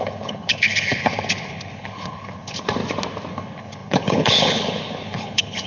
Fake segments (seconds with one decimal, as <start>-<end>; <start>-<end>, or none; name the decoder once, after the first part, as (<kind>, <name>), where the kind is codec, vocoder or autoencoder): 0.0-2.8 (codec, HILCodec); 3.3-5.7